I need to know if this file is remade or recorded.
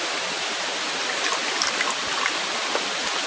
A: recorded